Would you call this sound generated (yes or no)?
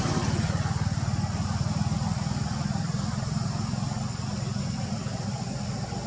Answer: no